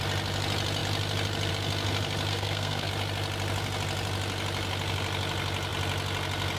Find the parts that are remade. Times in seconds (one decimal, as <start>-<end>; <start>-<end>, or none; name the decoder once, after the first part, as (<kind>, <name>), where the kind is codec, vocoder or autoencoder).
2.3-2.9 (codec, SNAC)